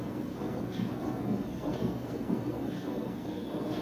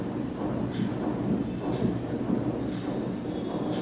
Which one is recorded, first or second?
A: second